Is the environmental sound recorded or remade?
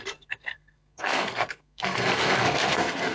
remade